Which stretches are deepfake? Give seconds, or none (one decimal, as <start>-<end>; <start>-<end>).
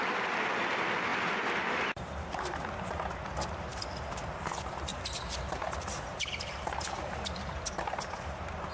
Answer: 4.9-8.7